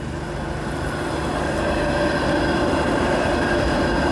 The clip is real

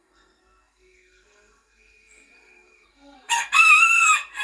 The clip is fake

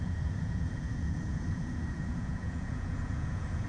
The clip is fake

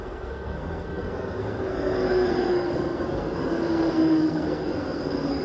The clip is fake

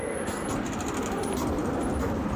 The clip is real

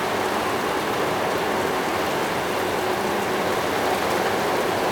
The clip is real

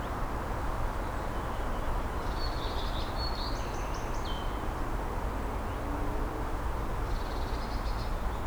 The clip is real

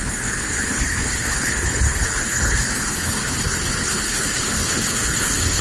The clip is fake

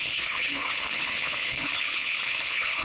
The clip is fake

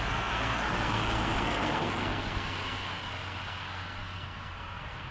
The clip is fake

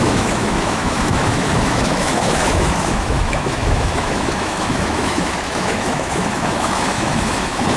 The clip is fake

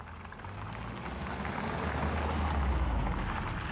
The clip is real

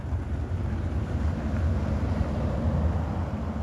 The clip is real